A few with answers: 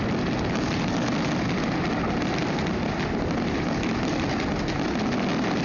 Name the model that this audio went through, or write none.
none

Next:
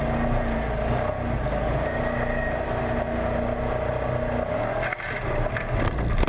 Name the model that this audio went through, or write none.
none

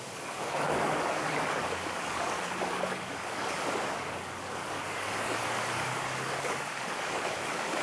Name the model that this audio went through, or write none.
codec, DAC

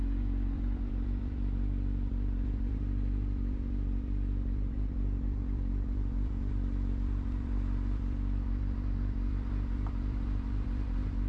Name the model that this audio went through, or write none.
vocoder, BigVGAN v2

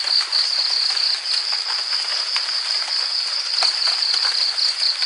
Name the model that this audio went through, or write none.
none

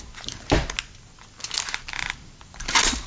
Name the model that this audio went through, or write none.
none